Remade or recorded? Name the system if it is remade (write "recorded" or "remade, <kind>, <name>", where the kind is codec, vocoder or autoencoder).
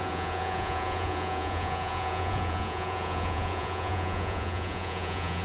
remade, vocoder, Vocos